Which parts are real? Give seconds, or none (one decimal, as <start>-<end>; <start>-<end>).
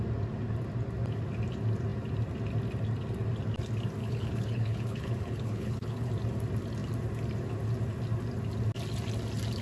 0.0-4.0; 6.1-9.6